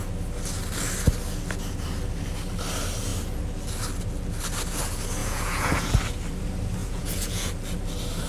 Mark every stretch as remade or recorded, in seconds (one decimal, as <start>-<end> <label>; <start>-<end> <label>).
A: 0.0-5.2 recorded; 5.2-6.0 remade; 6.0-6.8 recorded; 6.8-7.5 remade; 7.5-8.3 recorded